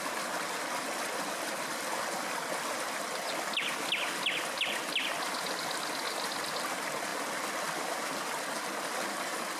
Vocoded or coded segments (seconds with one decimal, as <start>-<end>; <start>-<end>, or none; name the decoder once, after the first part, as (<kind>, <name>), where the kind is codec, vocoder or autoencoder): none